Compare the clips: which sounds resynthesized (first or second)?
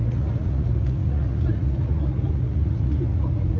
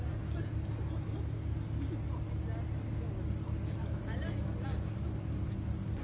first